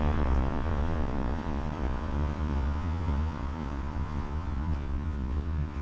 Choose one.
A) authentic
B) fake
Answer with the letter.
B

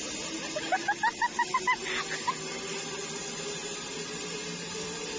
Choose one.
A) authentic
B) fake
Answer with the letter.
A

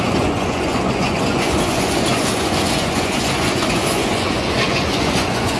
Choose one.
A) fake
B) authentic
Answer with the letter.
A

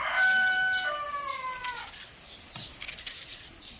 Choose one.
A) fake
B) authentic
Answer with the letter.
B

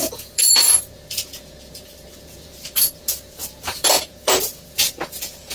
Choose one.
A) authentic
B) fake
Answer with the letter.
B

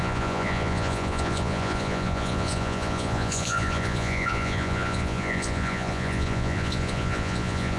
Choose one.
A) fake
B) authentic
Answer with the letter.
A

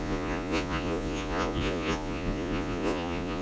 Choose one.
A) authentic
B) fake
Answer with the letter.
B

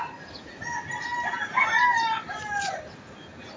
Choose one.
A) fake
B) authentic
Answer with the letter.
B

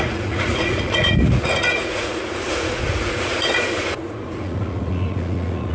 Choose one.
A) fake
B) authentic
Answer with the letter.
A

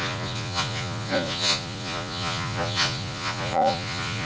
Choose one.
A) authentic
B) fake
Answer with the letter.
B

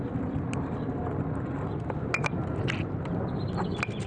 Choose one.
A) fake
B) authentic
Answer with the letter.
B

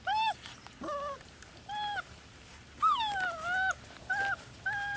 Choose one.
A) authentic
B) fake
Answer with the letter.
A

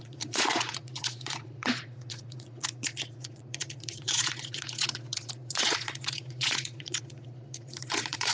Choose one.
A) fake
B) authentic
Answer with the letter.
A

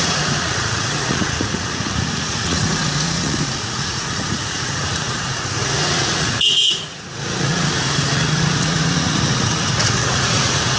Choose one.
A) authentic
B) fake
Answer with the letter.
B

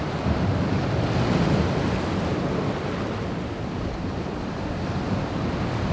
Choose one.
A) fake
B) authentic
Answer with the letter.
B